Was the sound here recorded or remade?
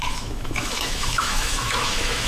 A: remade